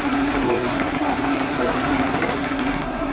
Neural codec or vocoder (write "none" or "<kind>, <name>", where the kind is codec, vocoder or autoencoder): codec, SNAC